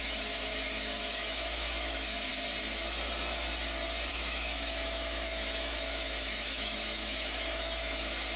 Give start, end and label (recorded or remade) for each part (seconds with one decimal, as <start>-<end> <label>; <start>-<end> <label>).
0.0-2.3 remade; 2.3-4.1 recorded; 4.1-8.4 remade